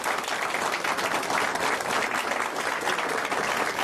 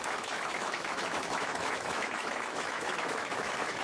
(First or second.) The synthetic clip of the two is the second